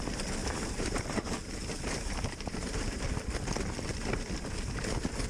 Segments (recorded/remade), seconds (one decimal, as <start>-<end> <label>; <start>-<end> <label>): 0.0-0.4 recorded; 0.4-3.1 remade; 3.1-5.3 recorded